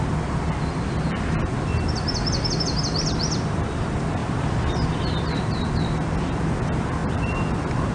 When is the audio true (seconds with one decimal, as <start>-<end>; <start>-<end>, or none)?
1.7-2.6